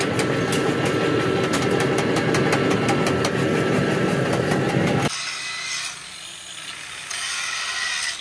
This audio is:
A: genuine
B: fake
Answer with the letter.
A